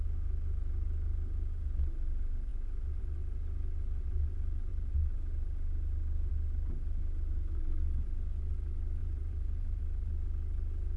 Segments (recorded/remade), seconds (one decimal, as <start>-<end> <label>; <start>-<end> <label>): 0.0-9.0 recorded; 9.0-9.8 remade; 9.8-11.0 recorded

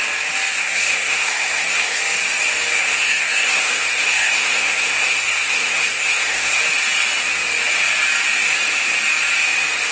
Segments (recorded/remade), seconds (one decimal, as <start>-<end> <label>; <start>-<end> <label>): 0.0-0.5 recorded; 0.5-2.0 remade; 2.0-2.8 recorded; 2.8-6.6 remade; 6.6-9.9 recorded

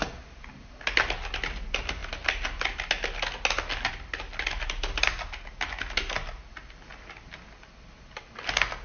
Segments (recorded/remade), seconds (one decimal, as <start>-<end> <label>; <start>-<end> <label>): 0.0-8.8 recorded

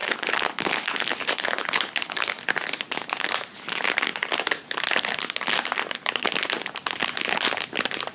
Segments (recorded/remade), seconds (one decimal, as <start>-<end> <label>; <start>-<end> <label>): 0.0-2.4 remade; 2.4-8.1 recorded

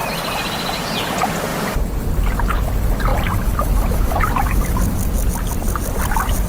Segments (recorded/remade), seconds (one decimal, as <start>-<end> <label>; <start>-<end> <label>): 0.0-6.5 recorded

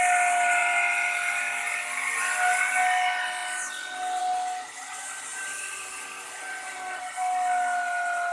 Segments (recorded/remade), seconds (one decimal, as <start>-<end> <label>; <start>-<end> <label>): 0.0-0.6 recorded; 0.6-1.8 remade; 1.8-5.3 recorded; 5.3-6.4 remade; 6.4-8.3 recorded

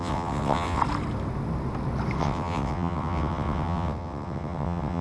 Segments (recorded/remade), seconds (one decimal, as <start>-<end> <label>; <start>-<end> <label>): 0.0-0.8 remade; 0.8-2.2 recorded; 2.2-5.0 remade

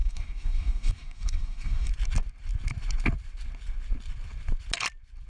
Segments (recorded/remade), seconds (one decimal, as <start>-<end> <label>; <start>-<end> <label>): 0.0-1.9 remade; 1.9-5.3 recorded